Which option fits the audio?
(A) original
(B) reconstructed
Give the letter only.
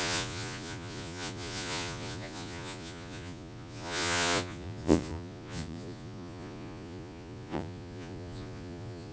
B